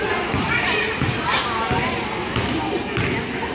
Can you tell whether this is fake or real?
real